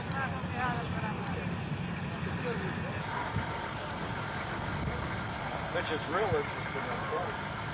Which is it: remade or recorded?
recorded